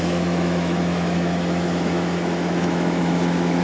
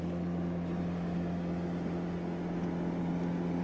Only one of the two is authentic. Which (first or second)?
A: second